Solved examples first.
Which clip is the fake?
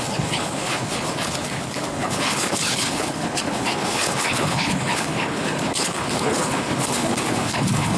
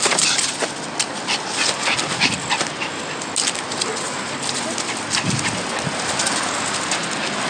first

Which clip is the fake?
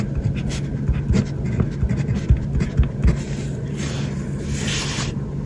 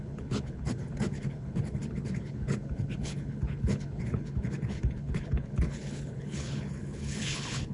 second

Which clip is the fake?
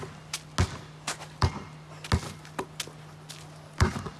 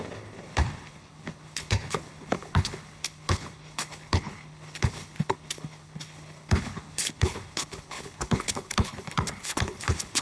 second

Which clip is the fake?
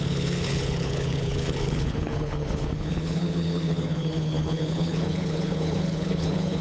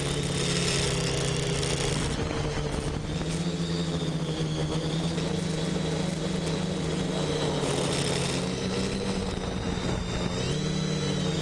first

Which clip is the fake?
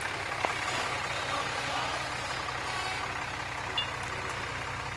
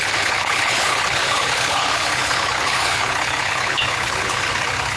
second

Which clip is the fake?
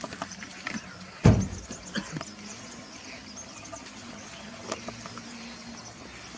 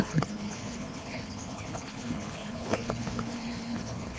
second